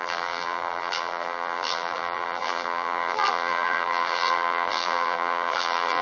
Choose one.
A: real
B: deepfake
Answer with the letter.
B